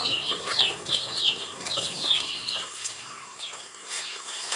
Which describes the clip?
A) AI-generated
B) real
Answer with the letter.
A